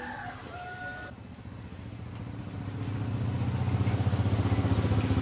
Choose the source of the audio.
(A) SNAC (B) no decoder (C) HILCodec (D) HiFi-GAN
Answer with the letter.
B